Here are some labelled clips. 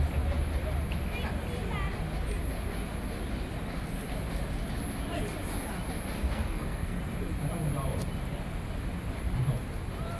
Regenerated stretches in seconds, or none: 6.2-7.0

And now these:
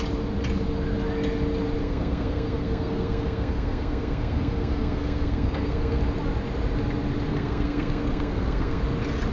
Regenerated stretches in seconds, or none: 1.8-6.0; 7.3-8.8

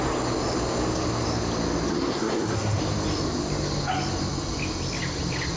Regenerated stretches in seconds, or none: 1.9-2.8